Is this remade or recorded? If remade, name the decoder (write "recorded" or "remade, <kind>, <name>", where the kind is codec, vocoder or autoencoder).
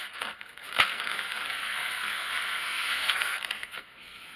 remade, codec, SNAC